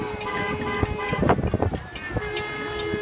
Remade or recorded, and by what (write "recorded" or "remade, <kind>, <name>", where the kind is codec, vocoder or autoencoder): recorded